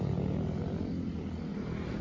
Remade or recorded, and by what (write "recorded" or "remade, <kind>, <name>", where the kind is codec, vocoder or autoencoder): recorded